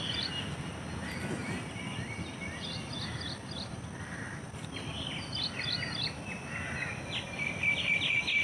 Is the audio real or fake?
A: real